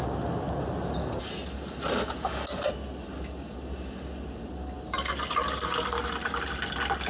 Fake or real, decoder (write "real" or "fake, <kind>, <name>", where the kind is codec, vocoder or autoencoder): real